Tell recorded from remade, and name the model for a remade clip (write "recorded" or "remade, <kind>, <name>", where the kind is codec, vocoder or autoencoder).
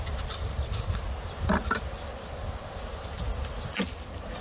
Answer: recorded